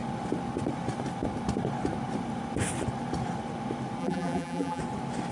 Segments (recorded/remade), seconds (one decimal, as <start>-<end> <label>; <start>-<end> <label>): 0.0-4.0 recorded; 4.0-4.8 remade; 4.8-5.3 recorded

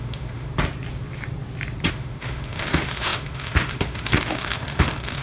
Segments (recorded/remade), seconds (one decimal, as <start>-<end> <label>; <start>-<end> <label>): 0.0-0.5 remade; 0.5-1.9 recorded; 1.9-5.2 remade

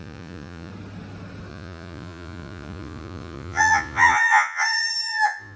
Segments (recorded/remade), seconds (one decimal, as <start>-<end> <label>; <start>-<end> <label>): 0.0-0.7 remade; 0.7-1.5 recorded; 1.5-5.6 remade

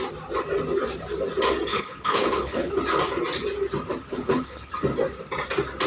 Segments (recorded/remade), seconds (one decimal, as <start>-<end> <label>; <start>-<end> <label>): 0.0-1.7 recorded; 1.7-2.7 remade; 2.7-4.1 recorded; 4.1-4.7 remade; 4.7-5.9 recorded